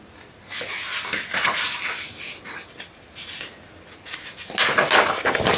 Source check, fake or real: real